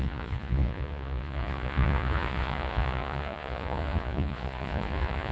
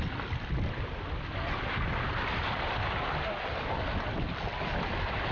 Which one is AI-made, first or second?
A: first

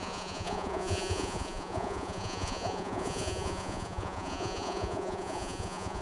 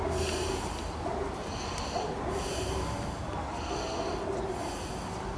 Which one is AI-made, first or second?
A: first